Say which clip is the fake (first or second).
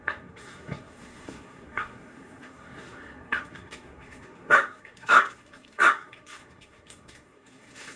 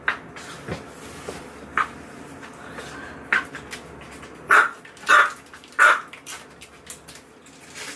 first